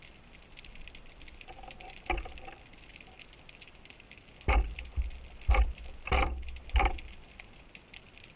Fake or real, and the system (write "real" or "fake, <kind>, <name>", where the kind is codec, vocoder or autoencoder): real